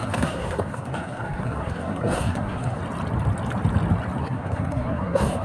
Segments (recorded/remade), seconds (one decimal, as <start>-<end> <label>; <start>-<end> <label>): 0.0-2.8 remade; 2.8-4.2 recorded; 4.2-5.4 remade